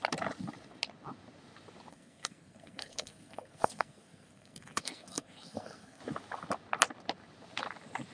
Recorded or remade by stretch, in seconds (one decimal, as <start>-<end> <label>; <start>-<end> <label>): 0.0-1.9 recorded; 1.9-6.0 remade; 6.0-8.1 recorded